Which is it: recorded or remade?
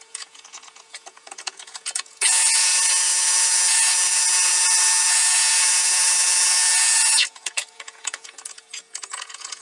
remade